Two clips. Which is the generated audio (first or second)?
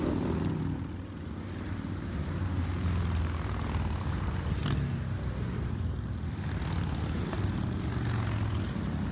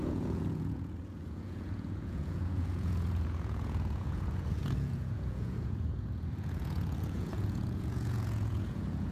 second